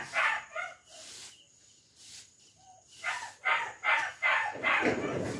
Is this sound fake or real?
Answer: real